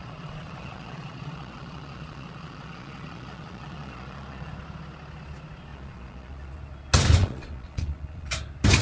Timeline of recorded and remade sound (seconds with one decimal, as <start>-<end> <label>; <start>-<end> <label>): 0.0-4.5 remade; 4.5-5.7 recorded; 5.7-6.6 remade; 6.6-7.2 recorded; 7.2-8.3 remade; 8.3-8.8 recorded

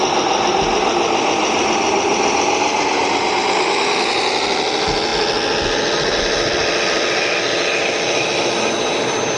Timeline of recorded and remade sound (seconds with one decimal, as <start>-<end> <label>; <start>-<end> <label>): 0.0-9.4 recorded

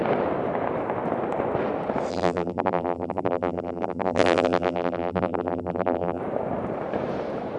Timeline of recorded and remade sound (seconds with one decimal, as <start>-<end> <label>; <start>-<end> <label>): 0.0-2.1 recorded; 2.1-6.2 remade; 6.2-7.6 recorded

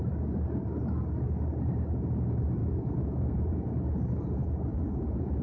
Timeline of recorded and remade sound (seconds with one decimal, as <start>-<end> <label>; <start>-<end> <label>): 0.0-2.6 recorded; 2.6-3.7 remade; 3.7-4.7 recorded; 4.7-5.4 remade

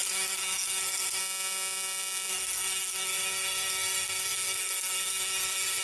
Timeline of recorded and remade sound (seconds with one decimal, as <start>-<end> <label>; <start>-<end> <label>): 0.0-1.2 remade; 1.2-2.3 recorded; 2.3-5.8 remade

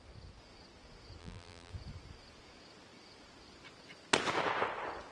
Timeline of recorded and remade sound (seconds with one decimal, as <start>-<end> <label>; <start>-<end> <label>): 0.0-1.2 recorded; 1.2-1.7 remade; 1.7-5.1 recorded